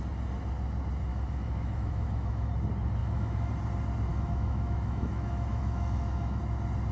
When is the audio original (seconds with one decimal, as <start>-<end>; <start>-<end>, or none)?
0.0-1.1; 2.5-3.0; 3.5-4.1; 6.4-6.9

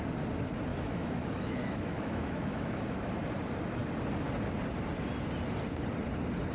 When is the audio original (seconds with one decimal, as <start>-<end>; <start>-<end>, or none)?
0.0-0.7; 2.8-6.5

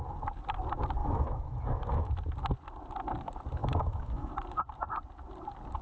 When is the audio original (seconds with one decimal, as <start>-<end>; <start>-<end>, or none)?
0.0-1.0; 2.1-3.6; 4.3-5.8

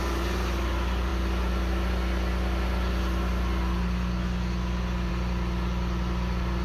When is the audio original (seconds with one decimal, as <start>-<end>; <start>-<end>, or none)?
0.0-6.6

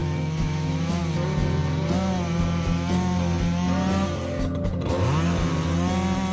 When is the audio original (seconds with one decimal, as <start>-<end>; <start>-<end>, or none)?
1.0-6.3

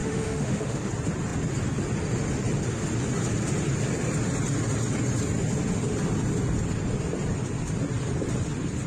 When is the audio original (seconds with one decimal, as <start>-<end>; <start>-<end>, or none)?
0.9-8.9

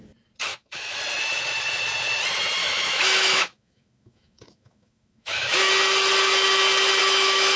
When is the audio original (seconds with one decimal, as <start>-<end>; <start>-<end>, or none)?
0.0-0.5; 1.0-2.6; 5.7-7.0